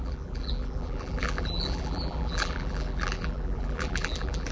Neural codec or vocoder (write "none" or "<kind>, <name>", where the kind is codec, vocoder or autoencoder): vocoder, BigVGAN v2